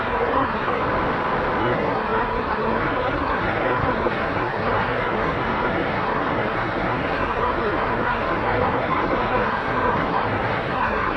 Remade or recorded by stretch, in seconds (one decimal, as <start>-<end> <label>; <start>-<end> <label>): 0.0-0.8 remade; 0.8-1.6 recorded; 1.6-11.2 remade

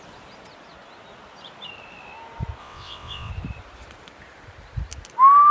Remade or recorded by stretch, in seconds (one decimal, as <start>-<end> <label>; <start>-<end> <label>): 0.0-2.6 recorded; 2.6-3.3 remade; 3.3-5.5 recorded

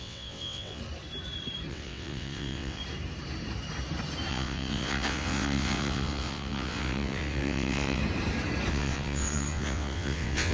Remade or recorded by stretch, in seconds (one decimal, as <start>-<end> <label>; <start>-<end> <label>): 0.0-0.8 remade; 0.8-1.7 recorded; 1.7-2.8 remade; 2.8-4.3 recorded; 4.3-8.0 remade; 8.0-8.7 recorded; 8.7-10.5 remade

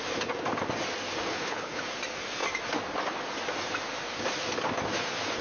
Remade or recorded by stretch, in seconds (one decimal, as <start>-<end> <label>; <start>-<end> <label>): 0.0-1.3 recorded; 1.3-1.8 remade; 1.8-5.4 recorded